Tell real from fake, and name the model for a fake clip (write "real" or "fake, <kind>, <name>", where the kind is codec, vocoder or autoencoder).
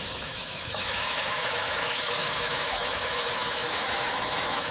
fake, autoencoder, DAC-VAE